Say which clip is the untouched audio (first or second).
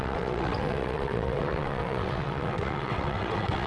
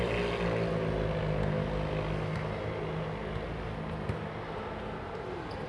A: second